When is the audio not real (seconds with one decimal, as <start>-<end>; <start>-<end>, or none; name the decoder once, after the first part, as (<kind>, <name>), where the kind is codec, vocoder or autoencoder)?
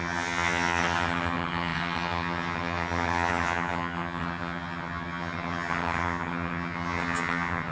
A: 0.0-7.7 (vocoder, HiFi-GAN)